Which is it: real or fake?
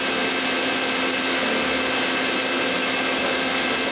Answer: real